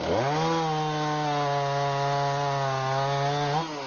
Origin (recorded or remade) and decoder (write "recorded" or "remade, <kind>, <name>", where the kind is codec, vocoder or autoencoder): recorded